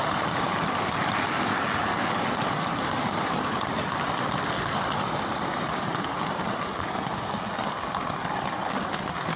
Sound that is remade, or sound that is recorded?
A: recorded